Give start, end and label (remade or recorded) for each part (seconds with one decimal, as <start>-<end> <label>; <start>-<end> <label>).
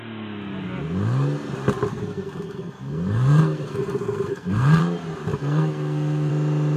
0.0-1.9 recorded; 1.9-4.8 remade; 4.8-5.3 recorded; 5.3-6.3 remade; 6.3-6.8 recorded